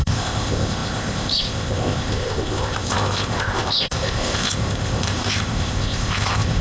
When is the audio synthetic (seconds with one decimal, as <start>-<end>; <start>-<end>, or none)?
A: 0.0-6.6